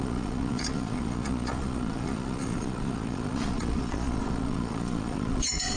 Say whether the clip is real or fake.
fake